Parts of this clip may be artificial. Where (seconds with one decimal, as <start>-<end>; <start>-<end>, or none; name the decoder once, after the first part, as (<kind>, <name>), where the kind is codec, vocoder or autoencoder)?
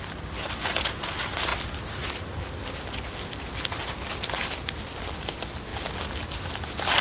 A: none